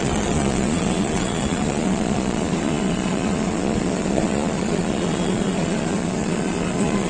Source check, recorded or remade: remade